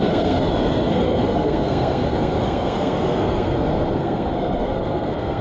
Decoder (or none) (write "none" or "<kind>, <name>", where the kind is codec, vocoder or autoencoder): codec, SNAC